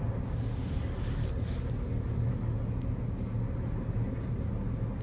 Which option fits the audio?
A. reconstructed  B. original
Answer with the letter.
B